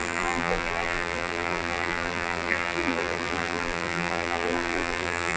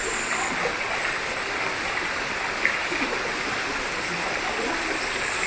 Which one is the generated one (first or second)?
first